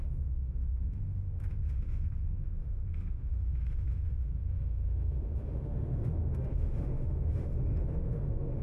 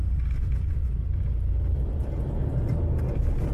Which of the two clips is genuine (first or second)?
second